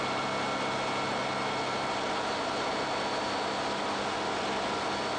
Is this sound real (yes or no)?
yes